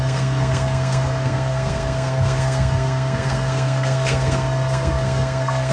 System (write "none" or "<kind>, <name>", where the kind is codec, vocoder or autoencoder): codec, SNAC